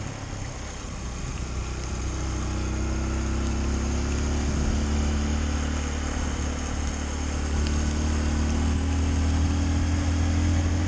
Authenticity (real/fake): real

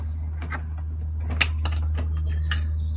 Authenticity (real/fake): real